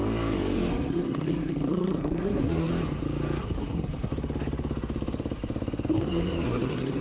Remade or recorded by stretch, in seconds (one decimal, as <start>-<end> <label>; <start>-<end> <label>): 0.0-0.7 recorded; 0.7-2.7 remade; 2.7-3.4 recorded; 3.4-4.1 remade; 4.1-5.9 recorded; 5.9-7.0 remade